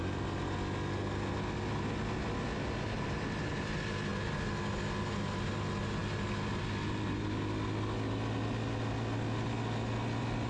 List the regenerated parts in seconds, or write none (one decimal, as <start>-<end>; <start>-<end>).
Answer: none